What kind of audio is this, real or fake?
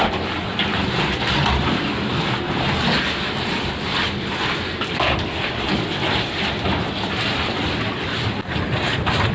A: real